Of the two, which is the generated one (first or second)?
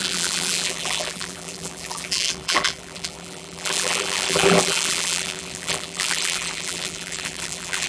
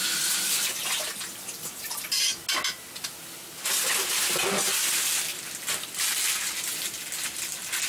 first